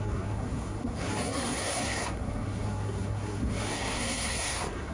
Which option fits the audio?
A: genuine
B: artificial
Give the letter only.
B